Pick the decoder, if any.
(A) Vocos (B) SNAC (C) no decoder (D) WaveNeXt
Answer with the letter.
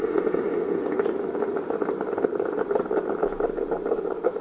C